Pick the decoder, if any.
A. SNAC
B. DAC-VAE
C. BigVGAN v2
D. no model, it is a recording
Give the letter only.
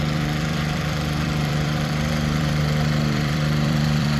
C